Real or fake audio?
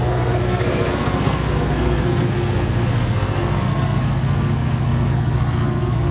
fake